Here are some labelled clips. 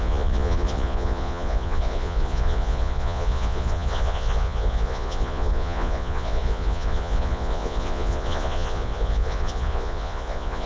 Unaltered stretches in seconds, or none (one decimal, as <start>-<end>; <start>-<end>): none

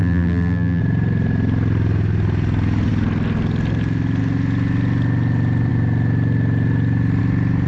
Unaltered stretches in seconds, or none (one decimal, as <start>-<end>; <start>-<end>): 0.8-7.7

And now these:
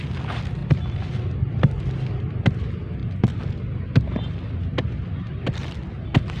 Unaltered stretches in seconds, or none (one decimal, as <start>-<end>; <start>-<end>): 0.0-6.4